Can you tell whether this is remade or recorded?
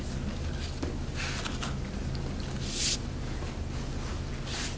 recorded